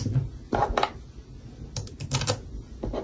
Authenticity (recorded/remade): recorded